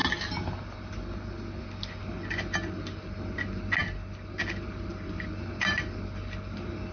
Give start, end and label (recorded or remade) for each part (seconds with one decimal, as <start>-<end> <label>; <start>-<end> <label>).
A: 0.0-6.9 recorded